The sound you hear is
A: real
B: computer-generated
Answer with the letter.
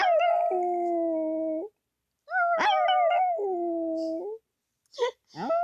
A